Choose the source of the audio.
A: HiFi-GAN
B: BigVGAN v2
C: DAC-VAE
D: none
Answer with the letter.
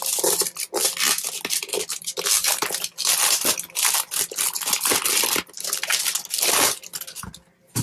D